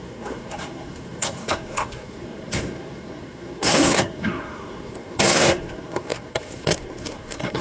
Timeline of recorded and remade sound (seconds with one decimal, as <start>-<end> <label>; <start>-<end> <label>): 0.0-7.6 remade